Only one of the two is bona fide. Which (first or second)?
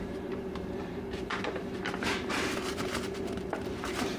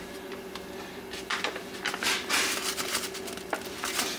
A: second